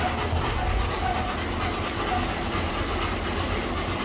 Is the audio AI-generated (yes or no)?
no